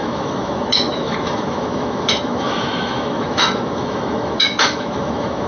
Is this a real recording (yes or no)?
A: no